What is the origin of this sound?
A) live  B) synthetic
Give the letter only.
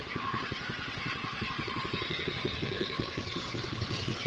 B